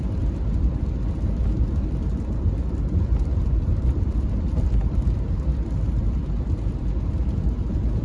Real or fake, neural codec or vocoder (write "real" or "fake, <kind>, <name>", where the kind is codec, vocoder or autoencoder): fake, vocoder, BigVGAN v2